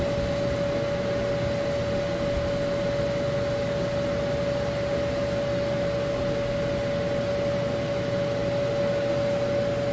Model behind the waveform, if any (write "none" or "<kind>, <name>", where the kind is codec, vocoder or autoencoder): none